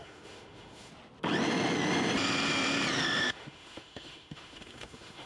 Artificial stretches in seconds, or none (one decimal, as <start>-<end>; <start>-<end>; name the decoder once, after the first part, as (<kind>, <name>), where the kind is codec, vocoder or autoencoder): 0.0-0.9 (autoencoder, DAC-VAE); 3.2-5.3